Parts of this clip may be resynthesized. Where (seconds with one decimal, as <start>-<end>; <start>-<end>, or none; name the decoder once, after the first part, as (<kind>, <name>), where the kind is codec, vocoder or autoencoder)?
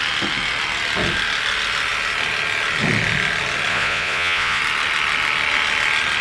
3.7-4.6 (vocoder, Vocos)